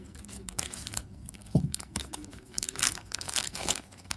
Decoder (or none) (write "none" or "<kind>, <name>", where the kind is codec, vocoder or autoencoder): codec, SNAC